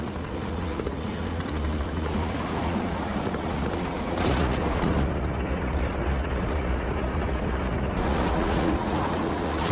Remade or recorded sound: remade